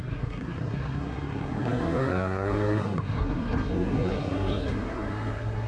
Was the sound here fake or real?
fake